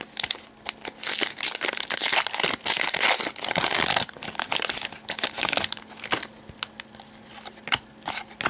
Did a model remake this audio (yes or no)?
no